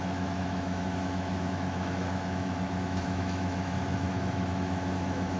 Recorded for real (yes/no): no